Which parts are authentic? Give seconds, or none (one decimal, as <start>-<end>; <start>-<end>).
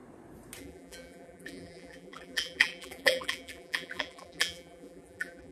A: 0.0-0.6